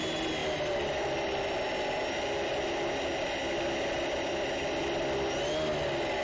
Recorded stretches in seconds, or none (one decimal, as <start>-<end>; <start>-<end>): 0.0-6.2